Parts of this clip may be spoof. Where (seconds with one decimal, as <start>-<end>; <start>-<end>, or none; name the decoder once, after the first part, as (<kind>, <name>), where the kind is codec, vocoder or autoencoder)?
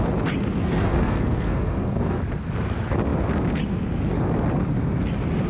0.6-2.2 (codec, SNAC)